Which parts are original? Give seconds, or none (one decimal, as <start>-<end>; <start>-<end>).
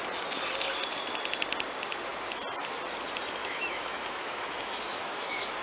0.0-3.4